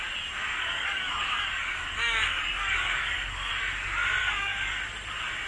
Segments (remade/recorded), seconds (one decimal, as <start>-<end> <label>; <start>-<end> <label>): 0.0-0.5 recorded; 0.5-3.5 remade; 3.5-4.2 recorded; 4.2-4.8 remade; 4.8-5.5 recorded